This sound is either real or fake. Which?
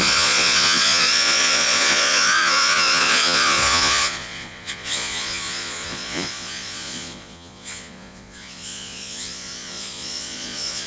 fake